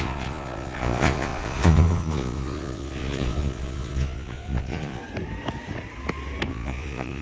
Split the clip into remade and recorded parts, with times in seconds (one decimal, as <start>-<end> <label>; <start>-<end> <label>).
0.0-5.0 remade; 5.0-6.5 recorded; 6.5-7.2 remade